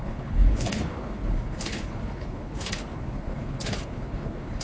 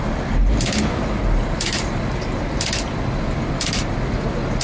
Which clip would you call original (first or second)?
second